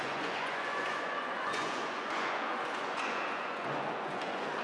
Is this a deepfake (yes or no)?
yes